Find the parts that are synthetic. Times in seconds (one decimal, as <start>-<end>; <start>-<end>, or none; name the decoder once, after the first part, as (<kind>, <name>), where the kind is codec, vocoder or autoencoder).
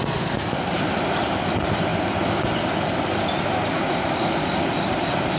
none